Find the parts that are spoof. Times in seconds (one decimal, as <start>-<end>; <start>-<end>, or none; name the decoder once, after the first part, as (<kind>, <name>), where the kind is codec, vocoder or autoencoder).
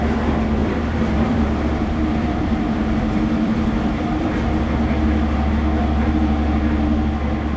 0.6-4.3 (vocoder, BigVGAN v2)